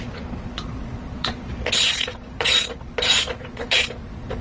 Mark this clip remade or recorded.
remade